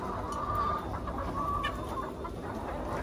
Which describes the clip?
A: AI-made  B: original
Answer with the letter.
B